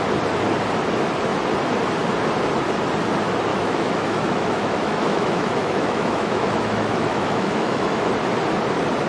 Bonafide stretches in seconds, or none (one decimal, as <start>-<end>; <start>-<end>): 0.0-3.5; 8.1-9.1